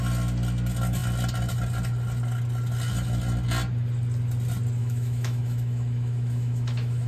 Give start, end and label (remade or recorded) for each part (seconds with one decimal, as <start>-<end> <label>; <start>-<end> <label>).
0.0-4.8 recorded; 4.8-7.1 remade